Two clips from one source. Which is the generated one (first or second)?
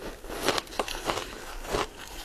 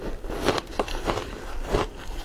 second